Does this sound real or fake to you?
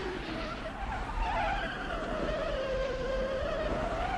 fake